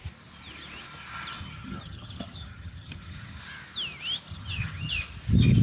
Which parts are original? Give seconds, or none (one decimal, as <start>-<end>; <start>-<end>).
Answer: 0.0-1.4; 3.4-4.3; 4.9-5.6